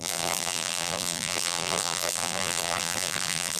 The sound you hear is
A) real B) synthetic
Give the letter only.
B